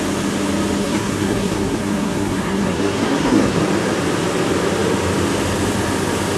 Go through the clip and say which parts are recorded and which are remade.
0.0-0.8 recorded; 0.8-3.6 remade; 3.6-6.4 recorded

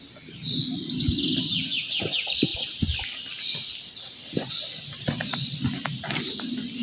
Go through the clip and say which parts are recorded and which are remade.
0.0-6.8 recorded

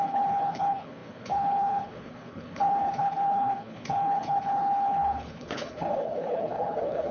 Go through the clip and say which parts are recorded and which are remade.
0.0-7.1 remade

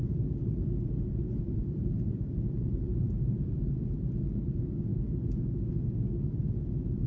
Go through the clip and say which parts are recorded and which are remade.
0.0-1.2 recorded; 1.2-3.7 remade; 3.7-7.1 recorded